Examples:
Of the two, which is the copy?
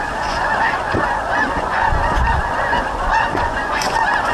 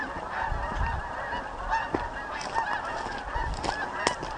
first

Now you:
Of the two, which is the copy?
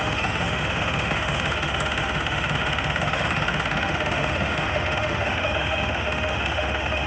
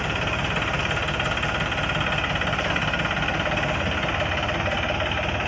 first